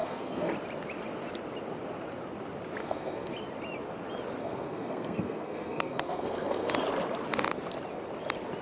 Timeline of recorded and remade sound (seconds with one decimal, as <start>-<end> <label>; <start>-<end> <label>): 0.0-0.5 remade; 0.5-2.8 recorded; 2.8-3.3 remade; 3.3-4.4 recorded; 4.4-6.7 remade; 6.7-8.6 recorded